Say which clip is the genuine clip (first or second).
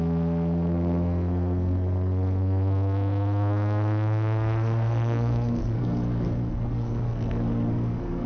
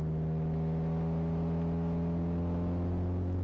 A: second